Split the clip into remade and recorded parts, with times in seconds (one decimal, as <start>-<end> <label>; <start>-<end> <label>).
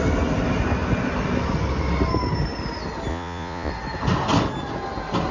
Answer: 0.0-3.1 recorded; 3.1-3.7 remade; 3.7-5.3 recorded